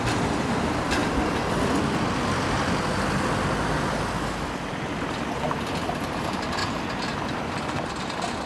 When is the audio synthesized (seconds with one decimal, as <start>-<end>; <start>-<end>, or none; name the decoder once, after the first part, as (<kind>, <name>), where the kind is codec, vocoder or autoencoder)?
none

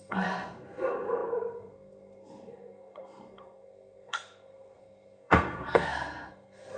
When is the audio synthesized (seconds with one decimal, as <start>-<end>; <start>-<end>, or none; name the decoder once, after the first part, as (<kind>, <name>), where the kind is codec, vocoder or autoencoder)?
0.0-6.8 (codec, SNAC)

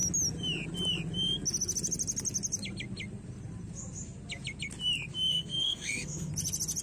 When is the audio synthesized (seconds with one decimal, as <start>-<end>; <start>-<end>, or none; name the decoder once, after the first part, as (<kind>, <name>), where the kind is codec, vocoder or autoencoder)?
5.3-6.3 (codec, SNAC)

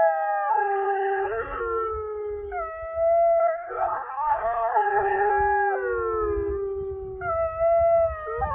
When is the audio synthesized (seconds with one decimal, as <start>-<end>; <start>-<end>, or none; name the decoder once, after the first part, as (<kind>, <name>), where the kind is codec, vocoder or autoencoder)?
0.5-1.6 (codec, SNAC); 3.4-5.3